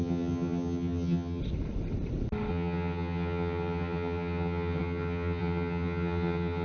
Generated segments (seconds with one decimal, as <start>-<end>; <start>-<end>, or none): 0.0-1.4; 2.5-6.6